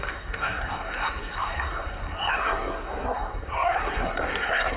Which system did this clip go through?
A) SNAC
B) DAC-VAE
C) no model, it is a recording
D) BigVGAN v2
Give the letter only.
A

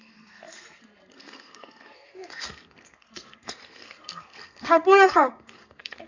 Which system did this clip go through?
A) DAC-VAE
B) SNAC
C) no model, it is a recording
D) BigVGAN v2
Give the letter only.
B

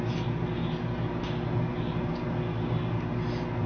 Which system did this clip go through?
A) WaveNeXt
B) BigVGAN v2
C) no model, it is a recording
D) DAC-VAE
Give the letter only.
C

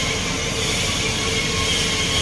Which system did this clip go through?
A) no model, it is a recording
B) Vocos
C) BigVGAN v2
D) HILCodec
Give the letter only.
A